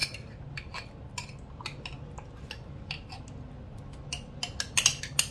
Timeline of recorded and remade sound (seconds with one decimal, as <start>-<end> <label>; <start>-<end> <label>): 0.0-5.3 recorded